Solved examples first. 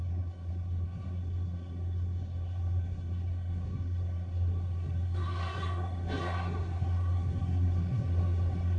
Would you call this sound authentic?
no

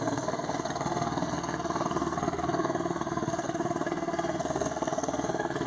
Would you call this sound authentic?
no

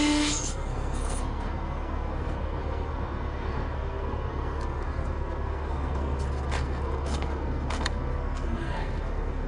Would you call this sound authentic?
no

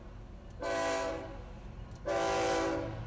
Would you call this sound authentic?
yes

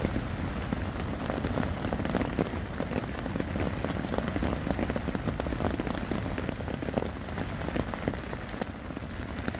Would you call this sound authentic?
yes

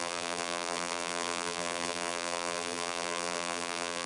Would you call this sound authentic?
no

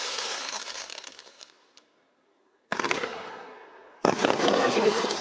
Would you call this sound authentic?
no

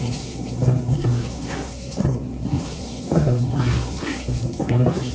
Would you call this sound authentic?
no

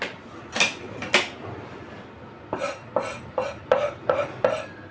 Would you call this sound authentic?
yes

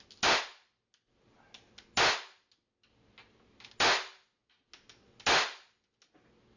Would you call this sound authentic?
yes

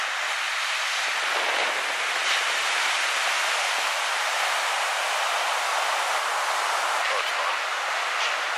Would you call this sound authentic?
yes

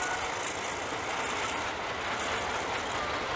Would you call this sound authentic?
yes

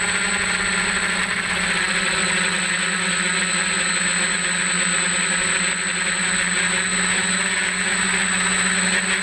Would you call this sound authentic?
yes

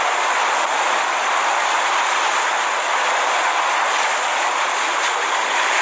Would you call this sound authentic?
yes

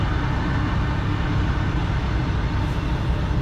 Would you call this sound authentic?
yes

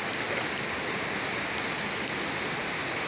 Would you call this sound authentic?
yes